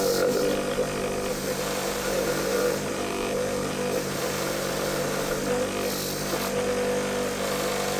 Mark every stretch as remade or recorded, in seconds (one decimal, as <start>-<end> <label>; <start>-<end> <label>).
0.0-1.3 recorded; 1.3-5.4 remade; 5.4-8.0 recorded